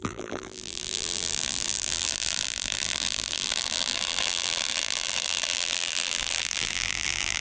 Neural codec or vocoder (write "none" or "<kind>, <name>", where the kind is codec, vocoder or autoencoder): vocoder, BigVGAN v2